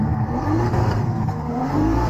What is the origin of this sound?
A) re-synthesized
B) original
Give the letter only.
A